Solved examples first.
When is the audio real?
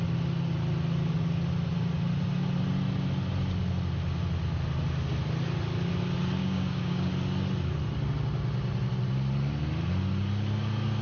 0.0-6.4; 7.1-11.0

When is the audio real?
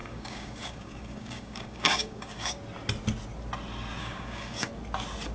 2.6-4.0; 4.7-5.3